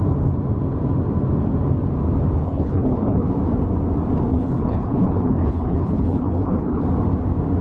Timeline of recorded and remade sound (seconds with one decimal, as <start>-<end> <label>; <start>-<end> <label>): 0.0-2.4 recorded; 2.4-3.3 remade; 3.3-4.3 recorded; 4.3-6.8 remade; 6.8-7.6 recorded